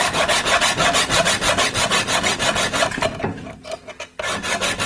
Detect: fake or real real